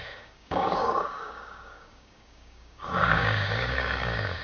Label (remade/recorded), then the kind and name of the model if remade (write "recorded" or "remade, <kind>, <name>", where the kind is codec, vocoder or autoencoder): remade, codec, DAC